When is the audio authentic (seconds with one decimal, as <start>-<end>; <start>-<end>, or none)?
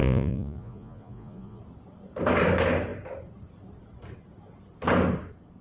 1.6-5.6